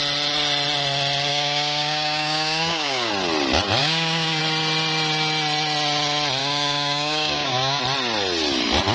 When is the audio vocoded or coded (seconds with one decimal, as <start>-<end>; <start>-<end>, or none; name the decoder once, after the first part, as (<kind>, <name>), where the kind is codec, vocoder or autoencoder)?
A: 1.3-3.1 (codec, DAC); 3.8-4.4; 6.4-7.8

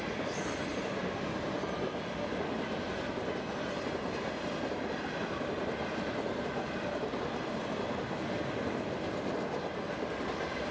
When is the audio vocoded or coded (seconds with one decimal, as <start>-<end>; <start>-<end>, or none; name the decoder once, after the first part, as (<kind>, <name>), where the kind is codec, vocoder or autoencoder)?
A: none